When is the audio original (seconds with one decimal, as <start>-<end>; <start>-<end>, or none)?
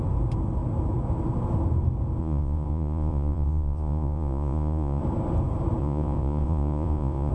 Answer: 0.0-2.2; 5.0-5.8